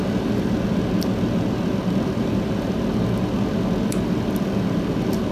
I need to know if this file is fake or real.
real